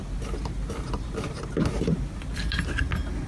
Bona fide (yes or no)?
yes